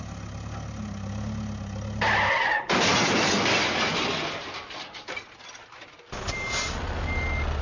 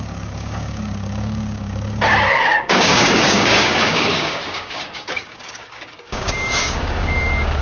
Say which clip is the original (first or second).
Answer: first